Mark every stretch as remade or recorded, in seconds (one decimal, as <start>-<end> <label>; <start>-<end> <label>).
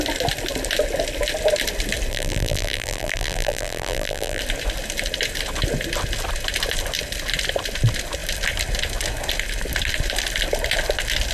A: 0.0-2.1 recorded; 2.1-4.4 remade; 4.4-11.3 recorded